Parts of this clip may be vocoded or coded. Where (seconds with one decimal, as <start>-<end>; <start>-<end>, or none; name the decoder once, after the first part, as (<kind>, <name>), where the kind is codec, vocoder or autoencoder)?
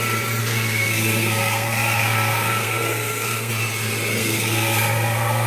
0.4-3.5 (codec, SNAC); 4.2-5.5